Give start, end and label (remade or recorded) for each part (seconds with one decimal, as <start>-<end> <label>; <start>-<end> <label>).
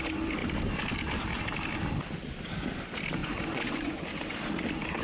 0.0-3.2 recorded; 3.2-4.0 remade; 4.0-5.0 recorded